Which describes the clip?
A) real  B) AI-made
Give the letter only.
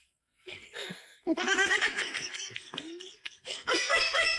B